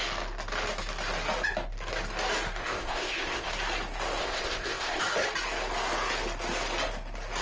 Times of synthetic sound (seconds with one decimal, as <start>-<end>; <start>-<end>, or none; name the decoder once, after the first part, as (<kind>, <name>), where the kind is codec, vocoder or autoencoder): 2.6-3.5 (codec, ZipCodec); 4.2-5.0